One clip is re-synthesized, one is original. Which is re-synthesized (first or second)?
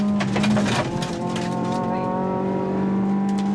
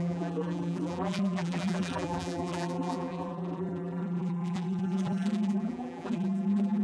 second